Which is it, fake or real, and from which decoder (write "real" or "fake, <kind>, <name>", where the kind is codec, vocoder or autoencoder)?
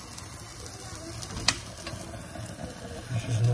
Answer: real